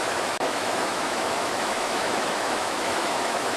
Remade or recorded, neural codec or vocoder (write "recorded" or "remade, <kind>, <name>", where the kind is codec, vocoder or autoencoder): remade, autoencoder, DAC-VAE